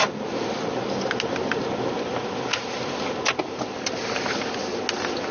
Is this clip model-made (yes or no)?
no